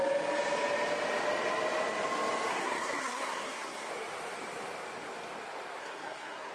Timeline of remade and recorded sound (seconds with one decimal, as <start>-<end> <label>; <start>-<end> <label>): 0.0-2.5 recorded; 2.5-3.9 remade; 3.9-5.8 recorded; 5.8-6.5 remade